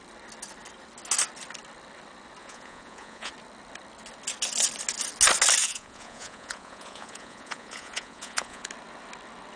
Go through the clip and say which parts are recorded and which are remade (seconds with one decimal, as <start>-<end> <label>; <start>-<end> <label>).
0.0-2.4 recorded; 2.4-3.3 remade; 3.3-5.6 recorded; 5.6-8.7 remade; 8.7-9.6 recorded